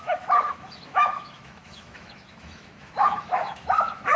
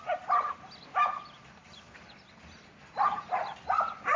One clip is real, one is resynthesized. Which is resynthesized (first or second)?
first